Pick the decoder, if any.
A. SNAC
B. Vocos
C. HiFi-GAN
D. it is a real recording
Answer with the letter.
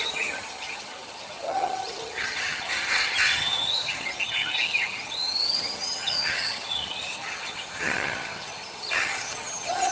C